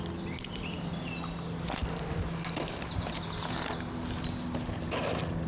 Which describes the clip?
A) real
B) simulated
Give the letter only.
A